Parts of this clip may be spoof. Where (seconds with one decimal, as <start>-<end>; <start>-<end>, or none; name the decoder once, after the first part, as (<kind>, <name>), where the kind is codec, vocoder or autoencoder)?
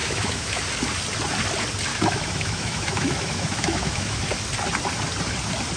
0.0-0.6 (autoencoder, DAC-VAE); 1.9-4.2